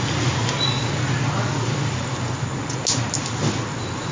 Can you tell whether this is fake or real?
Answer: real